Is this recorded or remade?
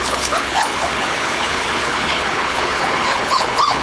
remade